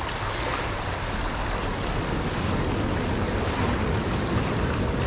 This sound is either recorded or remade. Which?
recorded